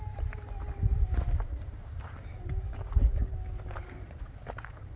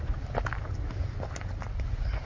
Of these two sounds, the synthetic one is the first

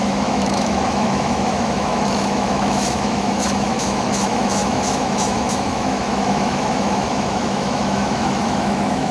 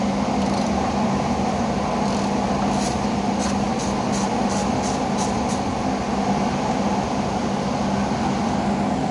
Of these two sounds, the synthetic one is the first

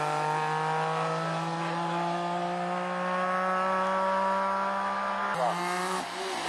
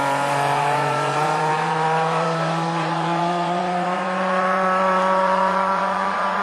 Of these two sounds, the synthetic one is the second